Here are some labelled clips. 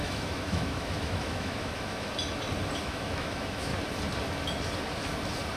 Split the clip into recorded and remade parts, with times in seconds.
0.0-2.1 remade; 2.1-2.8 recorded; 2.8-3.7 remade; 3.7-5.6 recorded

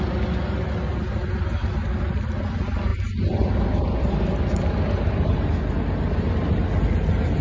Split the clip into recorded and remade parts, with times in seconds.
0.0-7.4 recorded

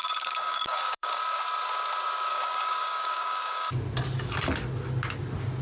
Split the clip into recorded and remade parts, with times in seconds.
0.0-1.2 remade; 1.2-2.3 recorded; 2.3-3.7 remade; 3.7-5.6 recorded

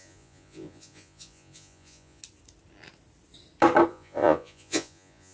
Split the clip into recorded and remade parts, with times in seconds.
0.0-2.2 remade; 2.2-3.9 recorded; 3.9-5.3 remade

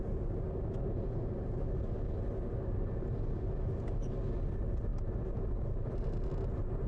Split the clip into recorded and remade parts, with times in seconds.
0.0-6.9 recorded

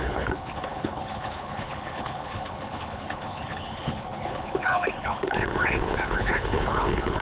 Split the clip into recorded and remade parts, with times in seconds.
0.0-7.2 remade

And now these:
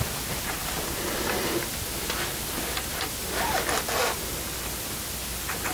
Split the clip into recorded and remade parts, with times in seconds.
0.0-5.7 recorded

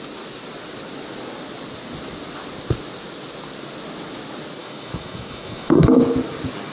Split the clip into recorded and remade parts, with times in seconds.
0.0-4.6 recorded; 4.6-6.0 remade; 6.0-6.7 recorded